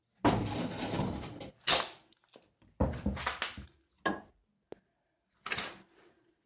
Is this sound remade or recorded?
recorded